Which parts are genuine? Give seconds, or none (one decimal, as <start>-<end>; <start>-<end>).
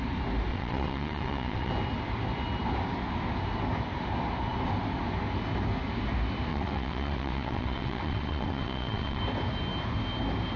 0.0-0.5; 1.7-6.5; 9.2-10.6